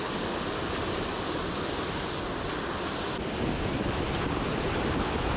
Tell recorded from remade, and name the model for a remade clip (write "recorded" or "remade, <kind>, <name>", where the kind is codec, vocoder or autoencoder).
recorded